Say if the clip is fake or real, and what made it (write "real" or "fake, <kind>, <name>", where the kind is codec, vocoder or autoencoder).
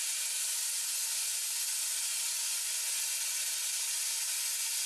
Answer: real